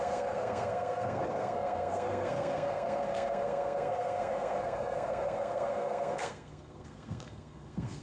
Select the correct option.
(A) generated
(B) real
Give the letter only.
A